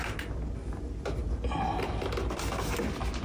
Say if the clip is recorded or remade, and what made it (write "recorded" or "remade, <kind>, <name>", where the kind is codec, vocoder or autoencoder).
recorded